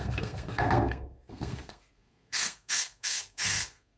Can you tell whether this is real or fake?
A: fake